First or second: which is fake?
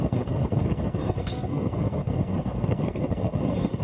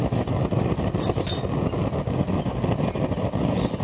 first